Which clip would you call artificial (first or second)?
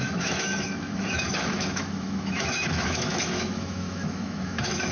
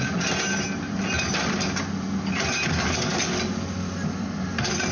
first